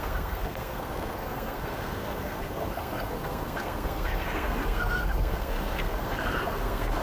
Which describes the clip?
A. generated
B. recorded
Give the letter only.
A